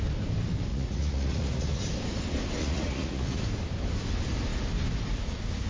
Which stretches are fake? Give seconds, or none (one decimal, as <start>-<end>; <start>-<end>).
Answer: 0.7-1.8; 2.6-3.4